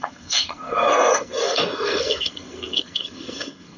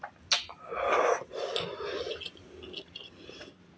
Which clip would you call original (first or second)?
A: second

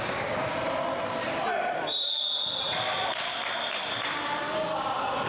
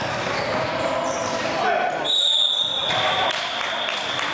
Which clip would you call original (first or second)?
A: first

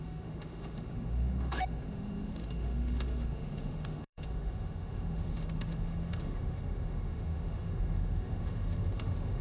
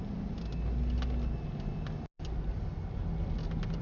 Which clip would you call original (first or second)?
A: second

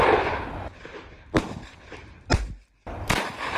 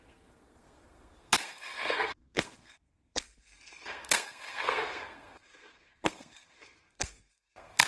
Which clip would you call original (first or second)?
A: first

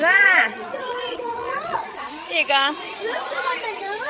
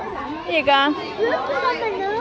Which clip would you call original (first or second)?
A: second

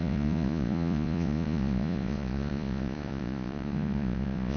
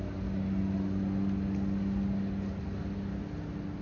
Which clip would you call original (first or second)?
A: second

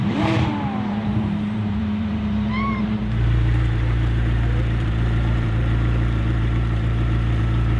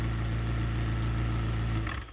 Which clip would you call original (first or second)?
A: second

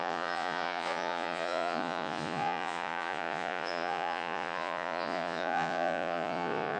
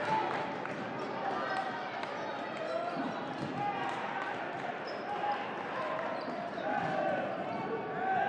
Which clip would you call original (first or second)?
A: second